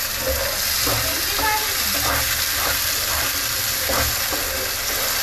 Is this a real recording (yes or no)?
yes